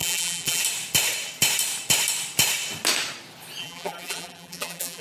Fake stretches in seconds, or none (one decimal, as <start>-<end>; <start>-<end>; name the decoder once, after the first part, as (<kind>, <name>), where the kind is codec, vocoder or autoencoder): 0.0-0.6 (vocoder, BigVGAN v2); 3.6-5.0